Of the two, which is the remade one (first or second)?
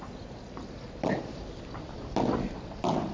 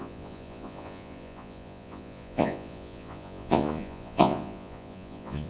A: second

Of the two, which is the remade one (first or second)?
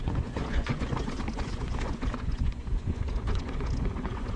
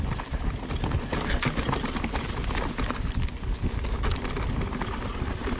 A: first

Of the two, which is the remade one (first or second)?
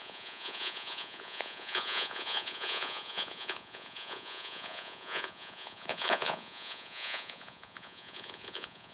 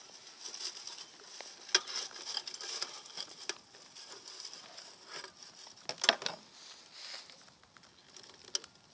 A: first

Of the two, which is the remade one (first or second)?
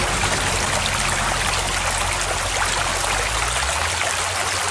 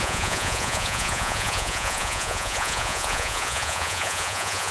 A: second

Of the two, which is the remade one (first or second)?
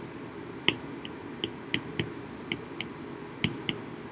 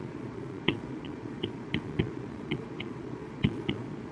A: second